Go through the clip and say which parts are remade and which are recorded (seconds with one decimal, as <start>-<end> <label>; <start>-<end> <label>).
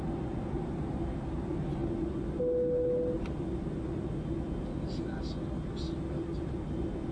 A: 0.0-7.1 recorded